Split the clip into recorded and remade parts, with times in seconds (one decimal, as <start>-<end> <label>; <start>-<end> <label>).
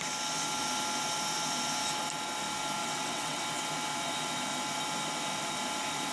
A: 0.0-2.8 recorded; 2.8-3.4 remade; 3.4-6.1 recorded